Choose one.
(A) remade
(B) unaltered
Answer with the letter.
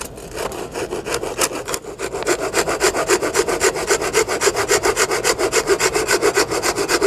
B